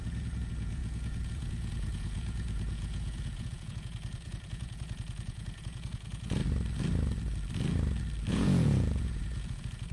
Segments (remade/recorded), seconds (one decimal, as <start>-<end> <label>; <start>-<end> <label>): 0.0-6.4 remade; 6.4-8.3 recorded; 8.3-9.9 remade